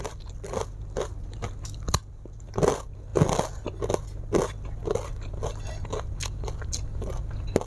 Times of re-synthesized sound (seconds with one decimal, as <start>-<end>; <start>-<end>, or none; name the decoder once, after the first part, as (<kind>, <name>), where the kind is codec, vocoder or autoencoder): none